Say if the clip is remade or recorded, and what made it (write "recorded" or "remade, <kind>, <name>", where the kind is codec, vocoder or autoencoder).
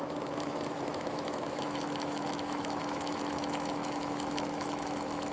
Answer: remade, autoencoder, DAC-VAE